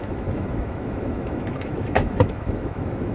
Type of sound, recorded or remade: remade